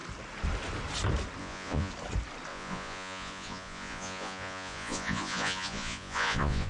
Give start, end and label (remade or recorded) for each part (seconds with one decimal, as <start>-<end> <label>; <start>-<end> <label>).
0.0-1.4 recorded; 1.4-1.9 remade; 1.9-2.5 recorded; 2.5-6.7 remade